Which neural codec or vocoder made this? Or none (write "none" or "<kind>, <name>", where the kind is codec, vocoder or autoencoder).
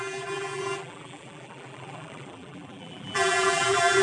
vocoder, BigVGAN v2